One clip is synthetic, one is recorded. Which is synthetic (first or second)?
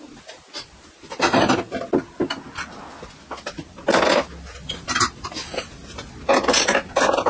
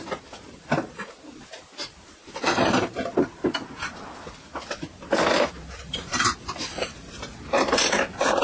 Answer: second